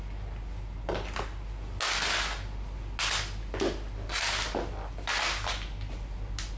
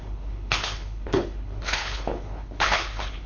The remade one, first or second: second